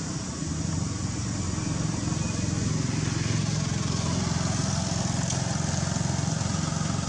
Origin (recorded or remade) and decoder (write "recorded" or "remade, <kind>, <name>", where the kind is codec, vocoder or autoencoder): recorded